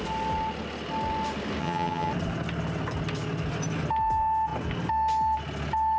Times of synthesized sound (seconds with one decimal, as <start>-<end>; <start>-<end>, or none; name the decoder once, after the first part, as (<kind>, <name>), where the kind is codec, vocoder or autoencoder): 1.6-2.1 (vocoder, HiFi-GAN)